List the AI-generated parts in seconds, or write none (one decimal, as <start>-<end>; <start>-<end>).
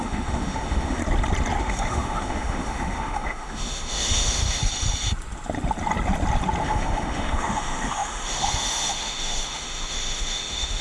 0.0-1.0; 1.6-4.6; 6.6-10.8